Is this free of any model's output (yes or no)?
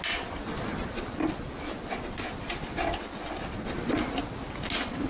yes